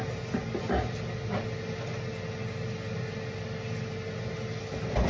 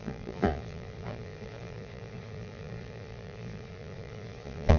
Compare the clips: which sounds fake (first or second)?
second